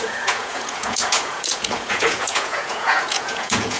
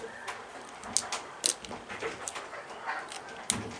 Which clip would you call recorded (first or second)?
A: second